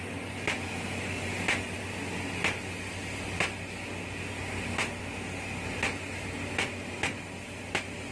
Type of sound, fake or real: real